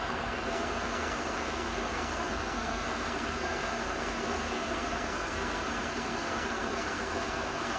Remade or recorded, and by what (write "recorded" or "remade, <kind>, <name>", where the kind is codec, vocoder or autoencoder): remade, codec, SNAC